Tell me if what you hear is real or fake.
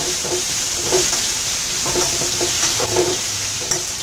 fake